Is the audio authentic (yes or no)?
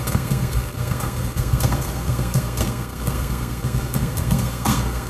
no